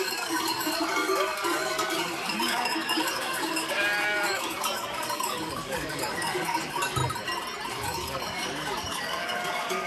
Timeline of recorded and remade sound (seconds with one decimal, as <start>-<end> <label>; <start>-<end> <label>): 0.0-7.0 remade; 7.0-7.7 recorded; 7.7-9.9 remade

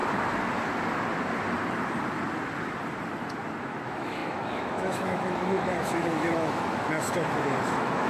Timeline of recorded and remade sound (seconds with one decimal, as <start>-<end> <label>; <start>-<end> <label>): 0.0-3.6 recorded; 3.6-8.1 remade

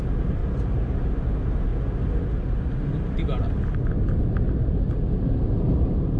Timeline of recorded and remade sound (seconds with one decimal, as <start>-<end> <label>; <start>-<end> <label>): 0.0-0.4 remade; 0.4-1.2 recorded; 1.2-1.7 remade; 1.7-4.5 recorded; 4.5-6.2 remade